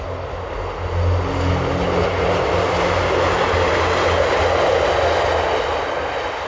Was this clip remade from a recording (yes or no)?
no